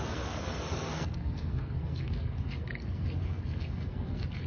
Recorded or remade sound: remade